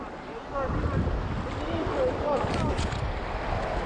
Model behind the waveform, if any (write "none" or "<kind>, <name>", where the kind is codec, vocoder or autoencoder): none